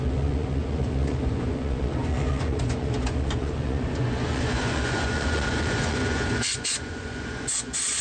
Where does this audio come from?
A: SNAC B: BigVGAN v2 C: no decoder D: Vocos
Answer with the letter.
D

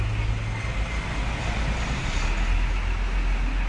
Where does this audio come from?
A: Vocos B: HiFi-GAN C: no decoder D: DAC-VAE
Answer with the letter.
C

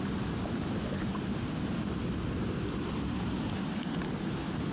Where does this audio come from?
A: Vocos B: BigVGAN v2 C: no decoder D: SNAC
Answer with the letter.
C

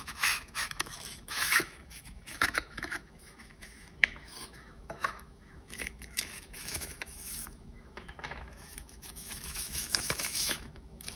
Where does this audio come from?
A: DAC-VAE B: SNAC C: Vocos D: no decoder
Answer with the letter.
A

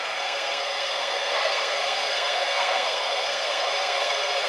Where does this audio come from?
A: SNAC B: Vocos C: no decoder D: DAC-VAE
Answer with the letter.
A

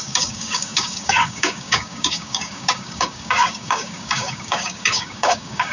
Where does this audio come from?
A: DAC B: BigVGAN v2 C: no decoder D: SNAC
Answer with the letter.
A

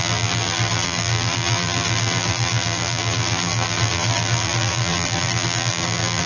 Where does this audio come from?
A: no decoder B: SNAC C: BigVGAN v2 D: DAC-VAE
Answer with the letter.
C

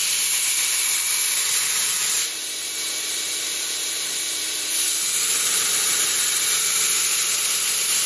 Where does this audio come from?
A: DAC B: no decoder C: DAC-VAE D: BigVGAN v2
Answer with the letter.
D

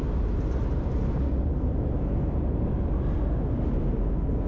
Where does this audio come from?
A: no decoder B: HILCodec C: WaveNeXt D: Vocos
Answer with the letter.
A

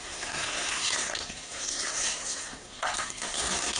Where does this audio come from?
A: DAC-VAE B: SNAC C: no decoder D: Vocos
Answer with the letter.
B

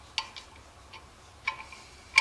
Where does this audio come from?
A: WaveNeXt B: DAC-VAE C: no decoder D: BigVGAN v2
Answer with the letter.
C